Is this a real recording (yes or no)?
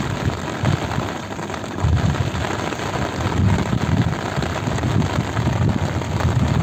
yes